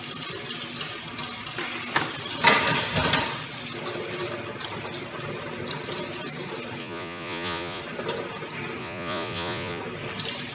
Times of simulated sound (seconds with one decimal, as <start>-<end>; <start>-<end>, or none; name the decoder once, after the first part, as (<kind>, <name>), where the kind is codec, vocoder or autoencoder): 6.8-7.8 (vocoder, Vocos); 8.8-9.8